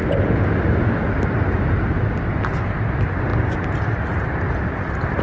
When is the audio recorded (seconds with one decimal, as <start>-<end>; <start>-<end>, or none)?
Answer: 0.0-5.2